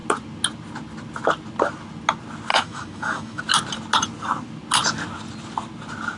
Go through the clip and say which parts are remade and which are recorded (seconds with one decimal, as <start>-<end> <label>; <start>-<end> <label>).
0.0-2.5 recorded; 2.5-3.4 remade; 3.4-6.2 recorded